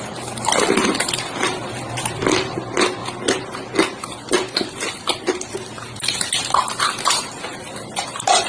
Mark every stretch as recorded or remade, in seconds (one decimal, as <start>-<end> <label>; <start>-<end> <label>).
0.0-3.0 remade; 3.0-4.5 recorded; 4.5-8.5 remade